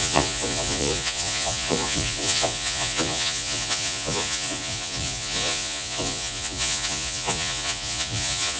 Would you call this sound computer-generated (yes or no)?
yes